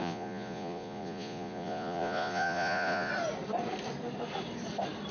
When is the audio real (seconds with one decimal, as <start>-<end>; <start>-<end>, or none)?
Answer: 3.1-5.1